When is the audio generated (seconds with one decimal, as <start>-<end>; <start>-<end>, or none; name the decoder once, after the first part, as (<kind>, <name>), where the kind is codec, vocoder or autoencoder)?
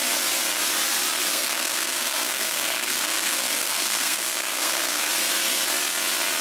1.3-5.1 (codec, SNAC)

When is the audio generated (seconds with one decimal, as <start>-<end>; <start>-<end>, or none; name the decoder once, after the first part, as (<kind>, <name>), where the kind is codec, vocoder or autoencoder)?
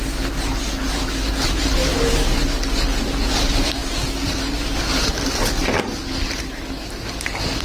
none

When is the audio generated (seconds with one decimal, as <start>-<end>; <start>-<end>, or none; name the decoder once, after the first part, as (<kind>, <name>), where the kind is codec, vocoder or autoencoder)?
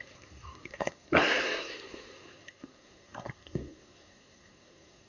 0.0-5.1 (codec, SNAC)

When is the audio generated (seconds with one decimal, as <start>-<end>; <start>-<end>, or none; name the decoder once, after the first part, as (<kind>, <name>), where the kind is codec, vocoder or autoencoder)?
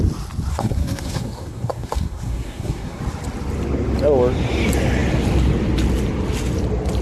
0.5-3.0 (codec, SNAC)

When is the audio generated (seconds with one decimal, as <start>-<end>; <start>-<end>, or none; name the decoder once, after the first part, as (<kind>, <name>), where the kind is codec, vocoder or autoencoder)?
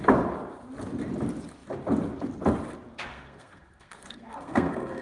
3.1-5.0 (codec, SNAC)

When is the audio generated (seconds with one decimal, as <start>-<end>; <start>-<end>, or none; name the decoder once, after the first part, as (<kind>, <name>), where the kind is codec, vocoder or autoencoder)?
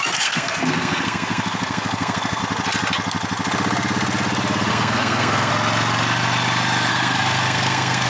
0.0-2.4 (codec, SNAC); 4.7-5.5; 6.9-8.1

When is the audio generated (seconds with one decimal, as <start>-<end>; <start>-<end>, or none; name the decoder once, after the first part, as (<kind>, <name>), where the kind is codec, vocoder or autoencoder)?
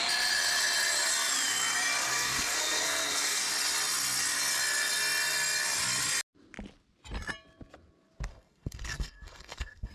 2.1-3.5 (codec, SNAC); 8.3-9.9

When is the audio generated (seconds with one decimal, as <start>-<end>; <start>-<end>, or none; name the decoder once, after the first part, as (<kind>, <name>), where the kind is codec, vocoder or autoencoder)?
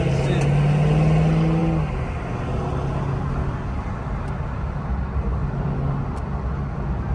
none